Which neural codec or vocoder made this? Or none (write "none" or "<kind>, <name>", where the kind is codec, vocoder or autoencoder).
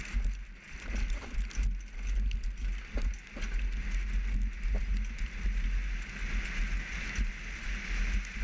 none